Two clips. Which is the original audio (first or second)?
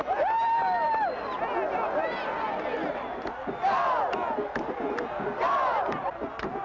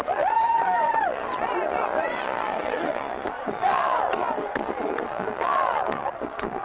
first